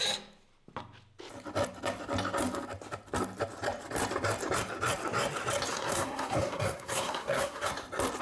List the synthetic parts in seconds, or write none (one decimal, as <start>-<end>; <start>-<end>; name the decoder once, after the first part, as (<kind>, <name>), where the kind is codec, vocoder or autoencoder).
5.7-7.7 (codec, SNAC)